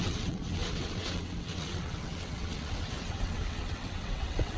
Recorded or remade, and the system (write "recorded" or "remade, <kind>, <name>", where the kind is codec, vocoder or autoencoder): remade, vocoder, WaveNeXt